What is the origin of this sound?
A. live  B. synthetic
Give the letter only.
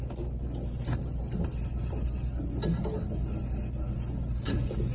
A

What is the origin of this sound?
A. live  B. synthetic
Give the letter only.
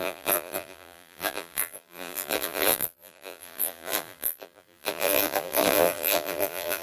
B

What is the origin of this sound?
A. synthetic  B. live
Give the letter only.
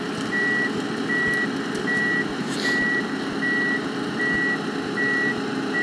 B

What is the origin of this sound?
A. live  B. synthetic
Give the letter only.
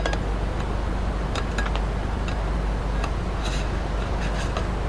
A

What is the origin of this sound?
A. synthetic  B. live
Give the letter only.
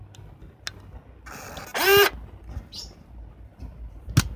B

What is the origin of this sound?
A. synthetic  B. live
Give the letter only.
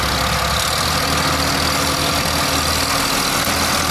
B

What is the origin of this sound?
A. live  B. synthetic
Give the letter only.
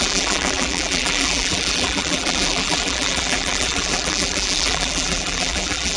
B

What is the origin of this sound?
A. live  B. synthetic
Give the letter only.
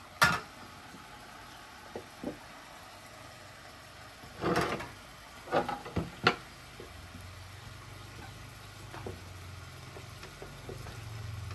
A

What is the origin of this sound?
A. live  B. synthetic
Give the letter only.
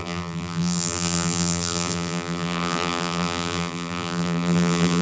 B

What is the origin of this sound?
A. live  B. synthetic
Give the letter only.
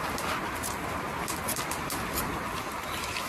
A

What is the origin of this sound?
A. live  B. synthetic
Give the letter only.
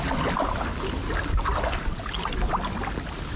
A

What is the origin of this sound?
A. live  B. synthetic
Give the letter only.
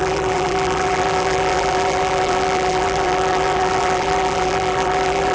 B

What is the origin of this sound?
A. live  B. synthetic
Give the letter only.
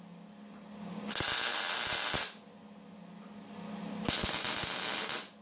A